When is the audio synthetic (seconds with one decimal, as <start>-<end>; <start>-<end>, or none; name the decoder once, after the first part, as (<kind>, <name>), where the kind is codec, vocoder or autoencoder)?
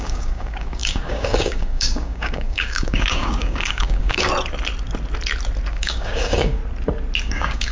0.0-4.3 (codec, DAC); 5.7-6.6; 7.2-7.7